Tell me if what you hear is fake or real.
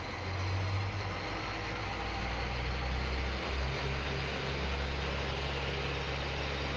real